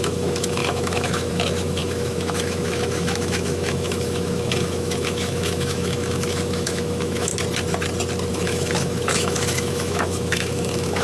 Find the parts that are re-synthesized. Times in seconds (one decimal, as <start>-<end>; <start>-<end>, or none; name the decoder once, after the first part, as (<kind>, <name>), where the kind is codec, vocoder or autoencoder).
0.0-7.3 (autoencoder, DAC-VAE); 8.3-11.0